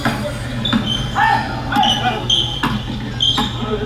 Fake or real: real